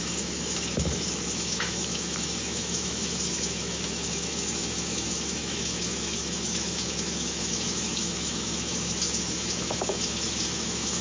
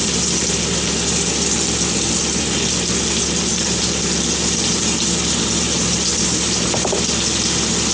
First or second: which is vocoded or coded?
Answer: first